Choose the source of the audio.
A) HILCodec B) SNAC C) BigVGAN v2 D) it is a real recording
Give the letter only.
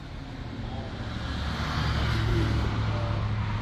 D